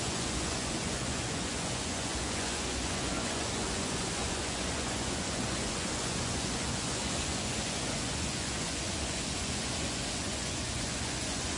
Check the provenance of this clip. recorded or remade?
remade